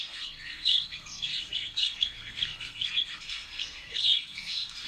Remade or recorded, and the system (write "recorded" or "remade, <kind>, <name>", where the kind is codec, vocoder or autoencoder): remade, codec, SNAC